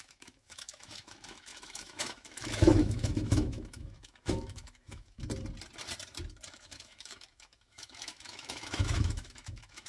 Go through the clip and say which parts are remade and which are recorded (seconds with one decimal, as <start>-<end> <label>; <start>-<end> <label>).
0.0-5.2 remade; 5.2-6.5 recorded; 6.5-9.9 remade